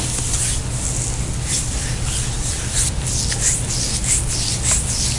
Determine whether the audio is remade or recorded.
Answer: recorded